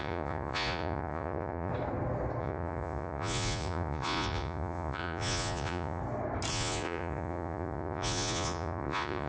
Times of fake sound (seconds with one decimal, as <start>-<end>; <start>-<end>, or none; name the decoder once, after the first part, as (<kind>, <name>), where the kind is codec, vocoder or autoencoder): 0.0-1.7 (vocoder, Vocos); 2.4-6.0; 6.5-9.3